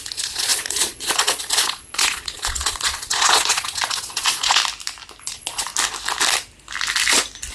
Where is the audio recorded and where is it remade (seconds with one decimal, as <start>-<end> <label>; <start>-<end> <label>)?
0.0-4.6 remade; 4.6-5.2 recorded; 5.2-5.7 remade; 5.7-7.5 recorded